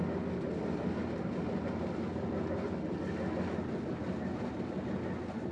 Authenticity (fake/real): real